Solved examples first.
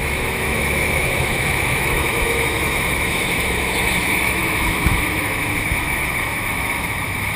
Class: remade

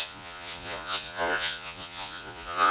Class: remade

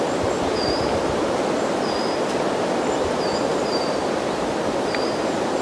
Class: remade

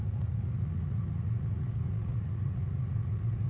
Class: remade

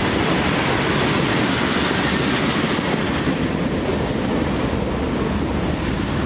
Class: recorded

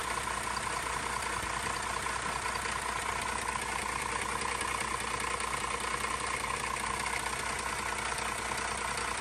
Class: recorded